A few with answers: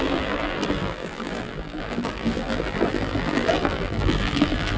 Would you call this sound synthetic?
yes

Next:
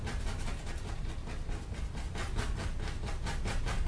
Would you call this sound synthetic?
no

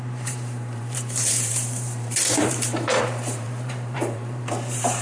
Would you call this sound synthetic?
yes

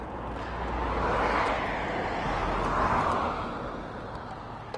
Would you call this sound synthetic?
no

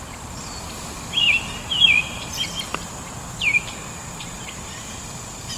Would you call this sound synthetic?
yes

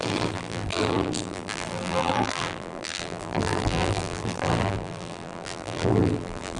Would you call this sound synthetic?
yes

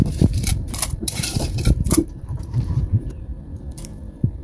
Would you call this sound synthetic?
yes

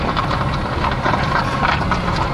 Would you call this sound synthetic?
yes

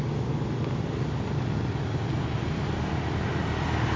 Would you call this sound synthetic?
no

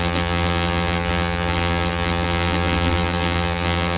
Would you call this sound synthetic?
yes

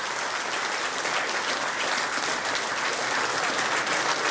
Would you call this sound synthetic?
no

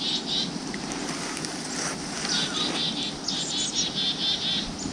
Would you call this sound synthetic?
no